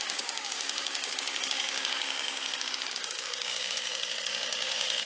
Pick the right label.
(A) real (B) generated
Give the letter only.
B